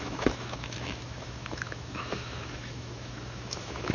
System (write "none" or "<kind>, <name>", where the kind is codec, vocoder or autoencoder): autoencoder, DAC-VAE